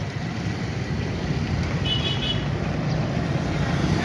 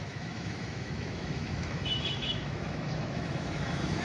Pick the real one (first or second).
first